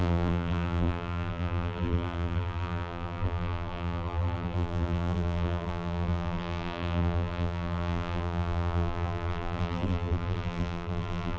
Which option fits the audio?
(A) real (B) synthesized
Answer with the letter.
B